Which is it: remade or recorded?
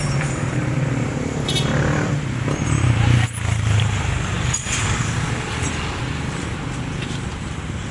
remade